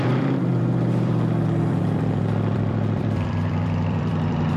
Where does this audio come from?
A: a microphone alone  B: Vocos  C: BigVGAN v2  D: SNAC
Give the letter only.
C